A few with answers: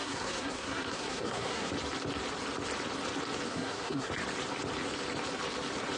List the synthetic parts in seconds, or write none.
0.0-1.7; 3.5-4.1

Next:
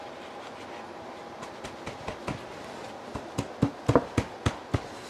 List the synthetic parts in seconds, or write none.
none